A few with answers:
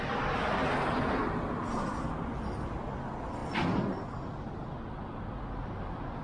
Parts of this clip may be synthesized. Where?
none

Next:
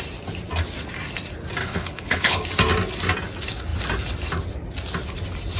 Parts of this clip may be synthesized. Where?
1.6-2.4 (codec, HILCodec)

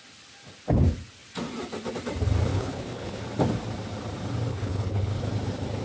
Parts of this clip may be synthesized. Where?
2.5-3.2 (codec, HILCodec); 4.5-5.2

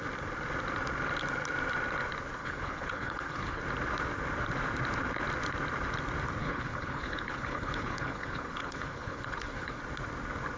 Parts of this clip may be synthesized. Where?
2.4-3.6 (codec, HILCodec); 6.4-9.8

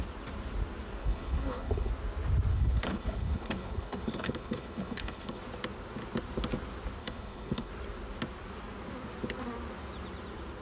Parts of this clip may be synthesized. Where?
1.0-1.9 (codec, HILCodec); 2.5-5.4; 7.0-7.7

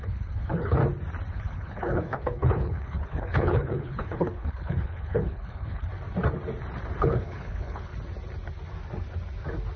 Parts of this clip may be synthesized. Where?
0.0-0.8 (codec, HILCodec); 1.3-5.9; 7.0-7.9

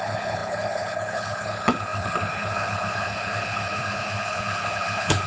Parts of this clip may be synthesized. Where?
0.0-5.3 (codec, HILCodec)

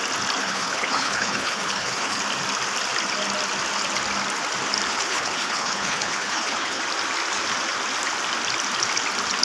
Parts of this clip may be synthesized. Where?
0.4-2.2 (codec, HILCodec); 4.9-6.8